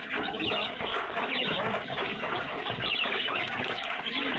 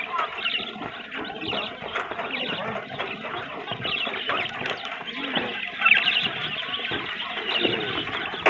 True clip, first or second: second